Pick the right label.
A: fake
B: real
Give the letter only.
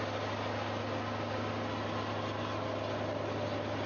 B